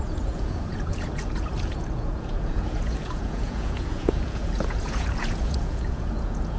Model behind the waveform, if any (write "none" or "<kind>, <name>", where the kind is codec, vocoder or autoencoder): vocoder, Vocos